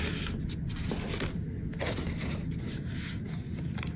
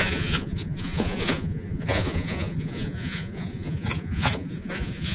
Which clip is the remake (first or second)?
second